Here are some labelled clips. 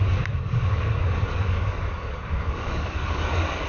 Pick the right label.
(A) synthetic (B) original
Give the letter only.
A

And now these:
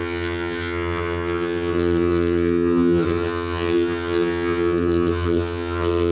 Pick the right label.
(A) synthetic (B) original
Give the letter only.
A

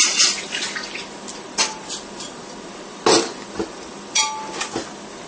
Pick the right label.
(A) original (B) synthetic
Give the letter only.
A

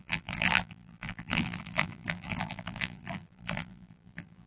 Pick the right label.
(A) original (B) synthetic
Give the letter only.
B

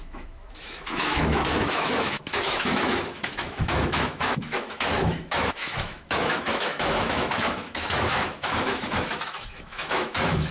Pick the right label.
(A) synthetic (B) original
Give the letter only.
A